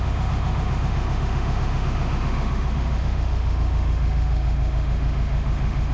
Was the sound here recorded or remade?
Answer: remade